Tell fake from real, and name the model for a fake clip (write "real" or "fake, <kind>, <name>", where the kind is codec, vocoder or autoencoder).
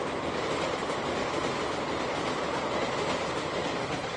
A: real